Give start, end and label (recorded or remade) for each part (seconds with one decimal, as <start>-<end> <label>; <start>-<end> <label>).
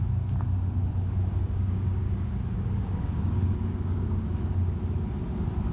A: 0.0-1.4 recorded; 1.4-4.8 remade; 4.8-5.7 recorded